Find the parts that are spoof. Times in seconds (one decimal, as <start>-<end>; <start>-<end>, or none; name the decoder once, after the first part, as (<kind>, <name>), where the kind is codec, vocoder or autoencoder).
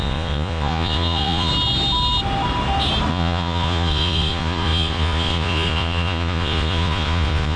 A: 0.0-1.5 (vocoder, Vocos); 3.1-7.6